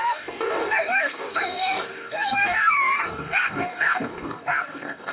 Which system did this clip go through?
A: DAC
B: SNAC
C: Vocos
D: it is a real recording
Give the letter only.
A